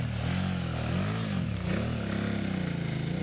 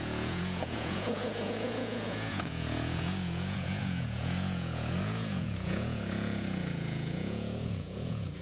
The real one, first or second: first